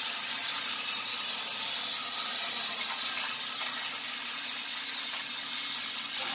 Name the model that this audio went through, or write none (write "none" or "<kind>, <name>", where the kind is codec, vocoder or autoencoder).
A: none